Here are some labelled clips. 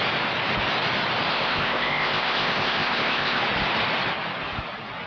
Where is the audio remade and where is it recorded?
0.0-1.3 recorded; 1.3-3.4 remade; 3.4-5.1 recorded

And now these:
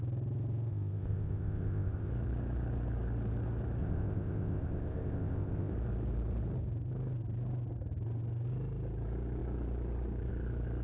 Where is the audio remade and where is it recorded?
0.0-0.7 recorded; 0.7-2.1 remade; 2.1-3.8 recorded; 3.8-5.7 remade; 5.7-10.8 recorded